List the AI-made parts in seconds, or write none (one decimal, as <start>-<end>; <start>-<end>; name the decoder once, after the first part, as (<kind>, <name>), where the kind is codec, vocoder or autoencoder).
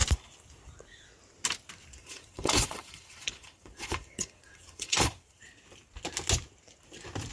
2.0-5.4 (vocoder, Vocos)